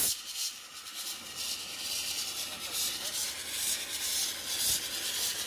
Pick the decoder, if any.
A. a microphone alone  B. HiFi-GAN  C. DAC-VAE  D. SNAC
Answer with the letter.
A